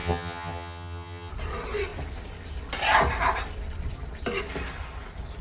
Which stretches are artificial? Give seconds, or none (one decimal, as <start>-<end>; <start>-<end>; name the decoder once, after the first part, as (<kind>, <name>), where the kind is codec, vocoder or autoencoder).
0.0-1.3 (vocoder, HiFi-GAN)